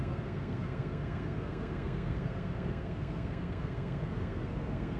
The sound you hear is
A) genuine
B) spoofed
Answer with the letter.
B